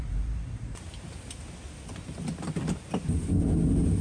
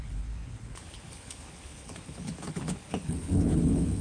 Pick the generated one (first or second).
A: second